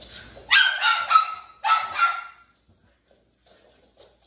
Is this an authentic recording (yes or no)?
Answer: yes